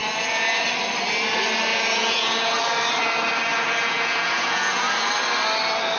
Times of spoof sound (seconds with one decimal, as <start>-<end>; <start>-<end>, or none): 0.0-0.6; 1.7-2.5; 3.5-5.1